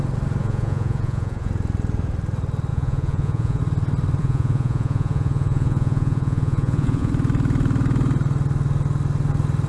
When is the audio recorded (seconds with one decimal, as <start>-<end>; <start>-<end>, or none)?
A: 0.0-0.4; 1.5-2.7; 3.6-4.2; 7.1-9.7